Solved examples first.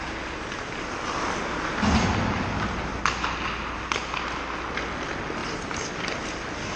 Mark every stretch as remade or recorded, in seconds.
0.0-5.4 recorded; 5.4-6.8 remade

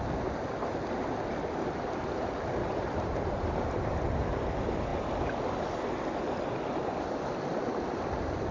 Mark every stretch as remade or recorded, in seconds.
0.0-2.6 recorded; 2.6-3.9 remade; 3.9-8.5 recorded

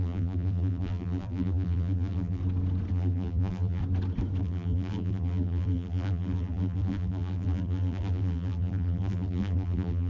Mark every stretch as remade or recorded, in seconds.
0.0-2.4 remade; 2.4-2.9 recorded; 2.9-3.8 remade; 3.8-4.4 recorded; 4.4-10.1 remade

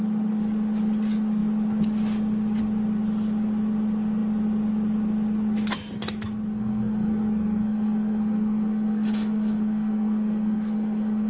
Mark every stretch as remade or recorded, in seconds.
0.0-6.5 recorded; 6.5-11.3 remade

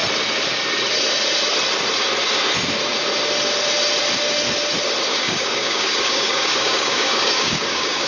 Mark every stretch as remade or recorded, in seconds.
0.0-5.1 recorded; 5.1-8.1 remade

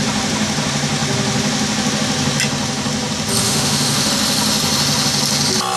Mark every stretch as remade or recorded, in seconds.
0.0-3.4 recorded; 3.4-4.1 remade; 4.1-5.8 recorded